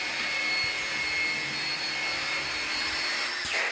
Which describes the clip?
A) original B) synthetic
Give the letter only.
A